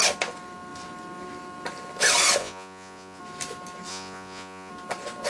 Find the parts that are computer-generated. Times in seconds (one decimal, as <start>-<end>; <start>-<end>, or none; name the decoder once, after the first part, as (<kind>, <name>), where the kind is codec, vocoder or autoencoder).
2.4-3.2 (vocoder, Vocos); 3.9-4.7